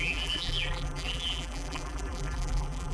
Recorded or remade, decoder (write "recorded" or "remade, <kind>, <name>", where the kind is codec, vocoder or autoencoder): remade, vocoder, BigVGAN v2